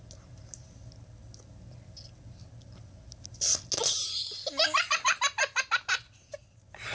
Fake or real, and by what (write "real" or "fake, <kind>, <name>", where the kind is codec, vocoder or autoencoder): real